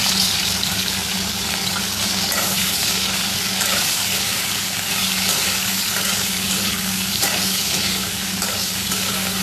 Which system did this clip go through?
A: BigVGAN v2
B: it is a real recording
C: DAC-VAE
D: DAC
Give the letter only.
D